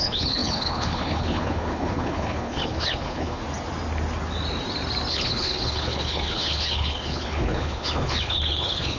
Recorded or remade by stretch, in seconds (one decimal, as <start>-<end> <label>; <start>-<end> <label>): 0.0-3.4 remade; 3.4-5.1 recorded; 5.1-9.0 remade